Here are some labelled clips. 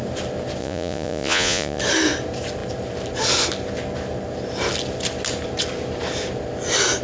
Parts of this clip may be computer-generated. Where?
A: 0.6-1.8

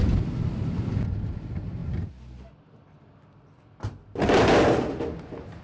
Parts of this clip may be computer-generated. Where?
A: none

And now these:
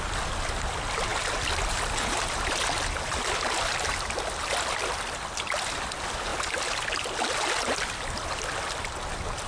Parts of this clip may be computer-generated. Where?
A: none

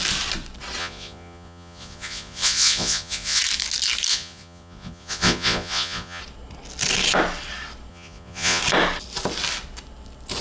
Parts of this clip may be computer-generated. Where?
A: 0.8-3.4; 4.1-6.2; 7.9-8.6

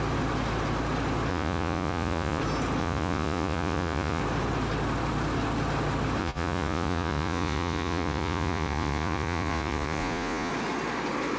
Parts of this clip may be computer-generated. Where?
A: 1.3-2.4; 2.8-4.2; 6.2-10.5

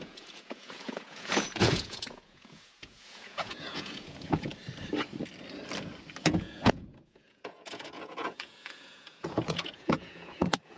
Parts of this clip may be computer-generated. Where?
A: 0.0-4.5; 6.2-10.8

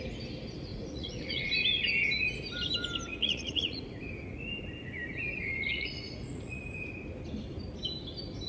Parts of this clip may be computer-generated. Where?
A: 0.7-1.5; 3.1-4.0; 5.7-6.6

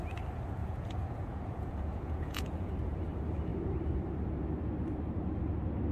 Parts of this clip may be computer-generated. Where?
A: 0.6-2.7